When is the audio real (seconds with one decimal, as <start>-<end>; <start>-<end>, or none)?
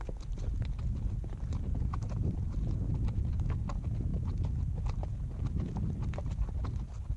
0.0-2.8; 3.6-7.2